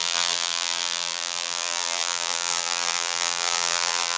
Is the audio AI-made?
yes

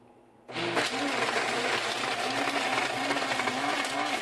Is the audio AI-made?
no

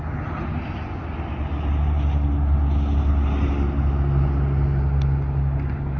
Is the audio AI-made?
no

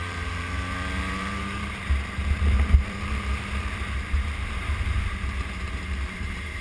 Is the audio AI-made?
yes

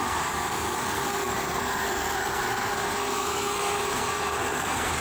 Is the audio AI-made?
yes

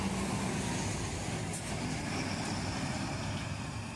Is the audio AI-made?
no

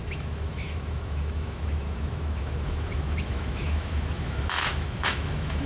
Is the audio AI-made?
yes